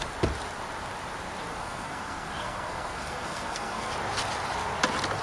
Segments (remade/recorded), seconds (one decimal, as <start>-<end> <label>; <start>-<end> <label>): 0.0-1.5 recorded; 1.5-3.9 remade; 3.9-5.2 recorded